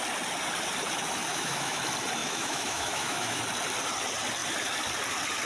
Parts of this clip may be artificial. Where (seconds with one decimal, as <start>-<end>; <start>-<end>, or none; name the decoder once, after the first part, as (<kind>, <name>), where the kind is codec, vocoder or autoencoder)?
1.3-1.8 (autoencoder, DAC-VAE); 2.2-3.4